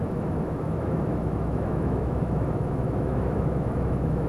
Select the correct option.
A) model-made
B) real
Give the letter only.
A